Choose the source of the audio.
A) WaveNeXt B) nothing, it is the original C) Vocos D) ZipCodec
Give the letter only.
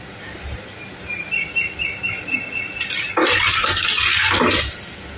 B